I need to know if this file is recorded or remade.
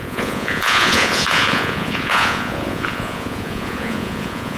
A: remade